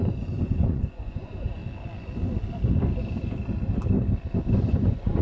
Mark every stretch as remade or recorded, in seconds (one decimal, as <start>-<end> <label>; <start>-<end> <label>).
0.0-1.6 remade; 1.6-4.7 recorded; 4.7-5.2 remade